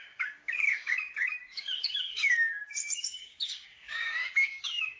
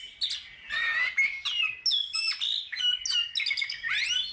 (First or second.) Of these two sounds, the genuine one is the second